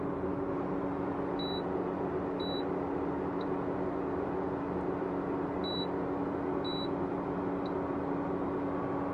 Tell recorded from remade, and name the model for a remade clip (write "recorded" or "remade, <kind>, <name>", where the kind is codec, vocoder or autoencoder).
recorded